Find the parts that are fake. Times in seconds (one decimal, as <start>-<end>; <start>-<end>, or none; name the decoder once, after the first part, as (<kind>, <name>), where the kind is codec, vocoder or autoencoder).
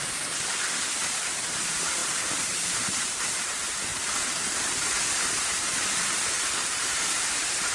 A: 0.0-7.7 (vocoder, BigVGAN v2)